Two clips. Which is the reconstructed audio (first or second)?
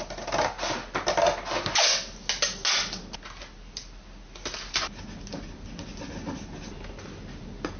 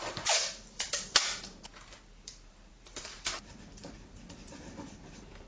second